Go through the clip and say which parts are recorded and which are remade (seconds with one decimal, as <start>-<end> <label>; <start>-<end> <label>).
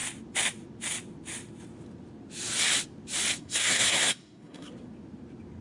0.0-3.4 recorded; 3.4-4.7 remade; 4.7-5.6 recorded